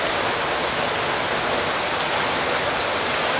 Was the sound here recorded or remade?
recorded